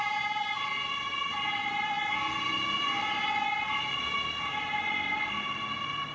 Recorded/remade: recorded